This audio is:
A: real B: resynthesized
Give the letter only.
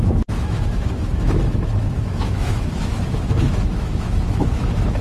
B